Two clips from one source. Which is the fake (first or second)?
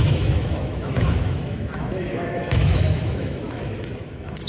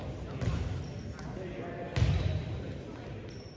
first